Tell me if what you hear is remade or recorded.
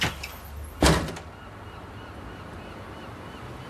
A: recorded